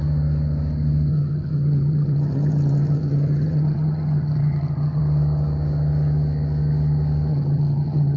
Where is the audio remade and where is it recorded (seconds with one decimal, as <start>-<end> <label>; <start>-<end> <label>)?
0.0-1.1 recorded; 1.1-5.0 remade; 5.0-7.3 recorded; 7.3-8.2 remade